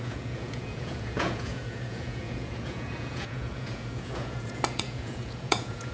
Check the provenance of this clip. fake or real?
fake